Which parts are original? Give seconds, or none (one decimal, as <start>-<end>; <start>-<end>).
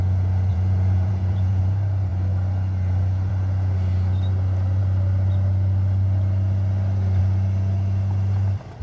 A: 0.0-0.5; 1.6-8.8